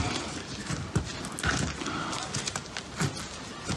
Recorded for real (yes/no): yes